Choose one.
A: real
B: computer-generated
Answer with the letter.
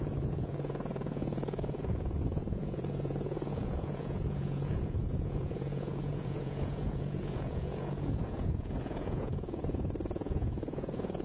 B